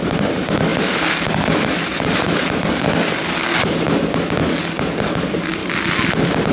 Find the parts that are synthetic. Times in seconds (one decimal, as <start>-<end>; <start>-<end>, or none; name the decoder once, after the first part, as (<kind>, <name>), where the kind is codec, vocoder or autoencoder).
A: 0.0-5.6 (codec, DAC)

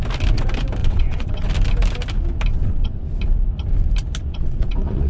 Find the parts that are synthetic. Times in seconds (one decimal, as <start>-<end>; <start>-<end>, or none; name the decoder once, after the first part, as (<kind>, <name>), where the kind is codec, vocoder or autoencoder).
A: 0.8-1.5 (vocoder, WaveNeXt); 2.5-3.0; 4.2-5.1